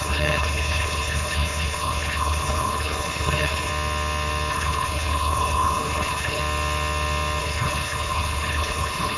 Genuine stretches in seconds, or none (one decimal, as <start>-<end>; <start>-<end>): 3.7-4.5; 6.4-7.4